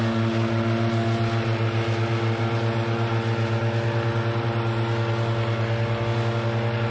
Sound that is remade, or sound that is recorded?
recorded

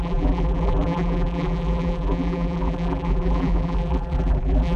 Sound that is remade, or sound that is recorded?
remade